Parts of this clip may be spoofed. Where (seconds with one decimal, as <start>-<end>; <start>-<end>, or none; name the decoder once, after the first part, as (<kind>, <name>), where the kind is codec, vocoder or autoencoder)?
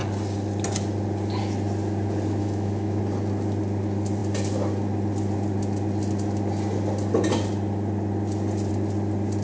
2.4-3.0 (autoencoder, DAC-VAE)